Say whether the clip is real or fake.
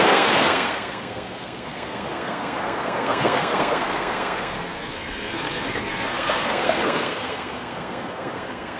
fake